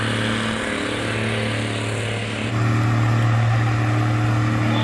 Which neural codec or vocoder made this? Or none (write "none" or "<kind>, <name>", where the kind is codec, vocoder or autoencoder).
none